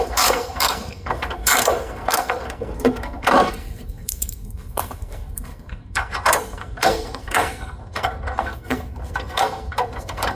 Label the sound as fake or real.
fake